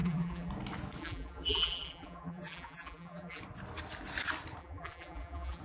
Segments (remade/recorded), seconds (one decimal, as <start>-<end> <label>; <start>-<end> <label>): 0.0-0.5 remade; 0.5-1.0 recorded; 1.0-3.4 remade; 3.4-4.6 recorded; 4.6-5.6 remade